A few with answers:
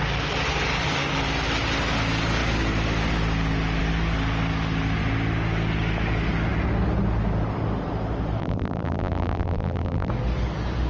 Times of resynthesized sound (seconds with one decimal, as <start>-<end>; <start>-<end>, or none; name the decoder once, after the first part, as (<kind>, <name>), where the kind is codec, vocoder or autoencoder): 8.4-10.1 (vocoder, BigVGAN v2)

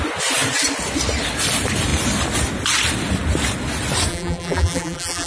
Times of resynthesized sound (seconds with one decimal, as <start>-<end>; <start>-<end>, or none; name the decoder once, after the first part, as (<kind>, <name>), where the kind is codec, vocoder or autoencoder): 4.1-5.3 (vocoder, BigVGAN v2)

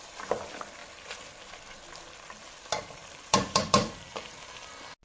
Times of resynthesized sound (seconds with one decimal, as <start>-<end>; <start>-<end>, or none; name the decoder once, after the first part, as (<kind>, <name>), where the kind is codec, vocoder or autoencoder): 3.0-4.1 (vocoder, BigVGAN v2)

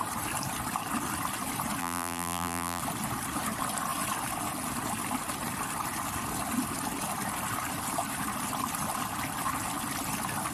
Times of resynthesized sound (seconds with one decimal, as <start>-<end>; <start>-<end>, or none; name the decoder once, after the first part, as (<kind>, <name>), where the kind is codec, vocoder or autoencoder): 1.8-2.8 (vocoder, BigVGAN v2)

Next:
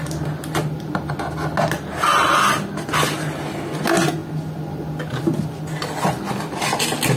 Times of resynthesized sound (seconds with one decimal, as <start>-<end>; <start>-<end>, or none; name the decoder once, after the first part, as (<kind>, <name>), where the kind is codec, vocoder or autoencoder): none